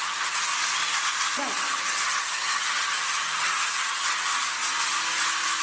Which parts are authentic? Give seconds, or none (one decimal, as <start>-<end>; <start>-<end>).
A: 0.5-1.8; 4.3-5.6